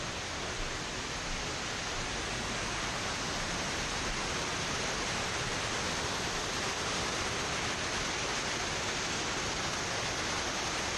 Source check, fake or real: real